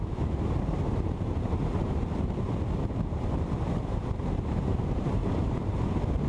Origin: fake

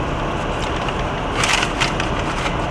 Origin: real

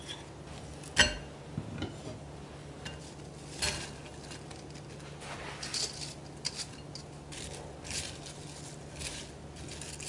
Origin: real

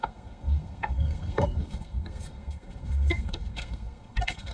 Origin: fake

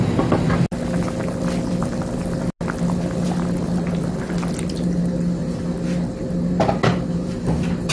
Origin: real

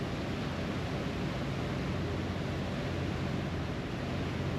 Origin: real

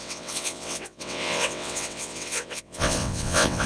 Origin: fake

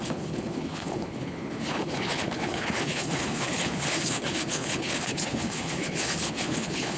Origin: fake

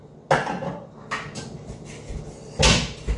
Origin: real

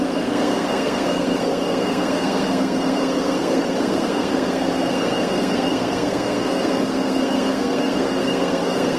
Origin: fake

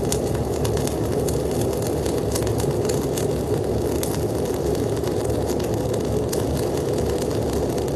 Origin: real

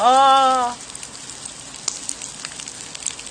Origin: real